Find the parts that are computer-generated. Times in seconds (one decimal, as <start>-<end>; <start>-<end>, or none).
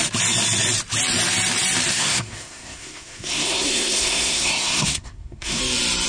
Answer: 1.9-5.6